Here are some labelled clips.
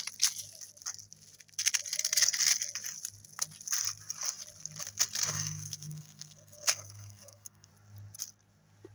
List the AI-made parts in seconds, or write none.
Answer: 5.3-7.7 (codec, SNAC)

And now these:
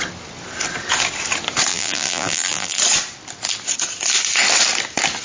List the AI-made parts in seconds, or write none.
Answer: 1.7-2.8 (vocoder, BigVGAN v2)

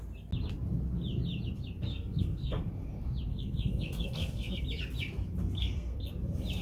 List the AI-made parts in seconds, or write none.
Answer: 1.9-2.7 (codec, SNAC); 3.3-4.6; 5.4-6.1